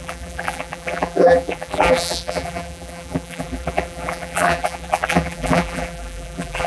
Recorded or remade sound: remade